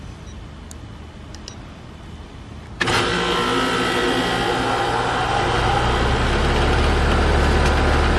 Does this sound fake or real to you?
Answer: real